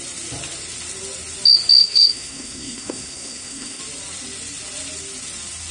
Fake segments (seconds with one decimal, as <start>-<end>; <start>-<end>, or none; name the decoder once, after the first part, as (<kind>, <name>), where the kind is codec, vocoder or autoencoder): 1.8-3.8 (codec, SNAC)